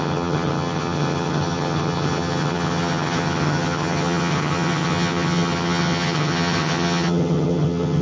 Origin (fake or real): fake